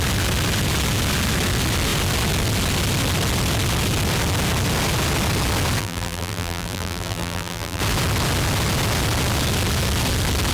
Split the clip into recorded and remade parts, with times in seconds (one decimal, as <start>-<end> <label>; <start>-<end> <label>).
0.0-5.8 recorded; 5.8-7.8 remade; 7.8-10.5 recorded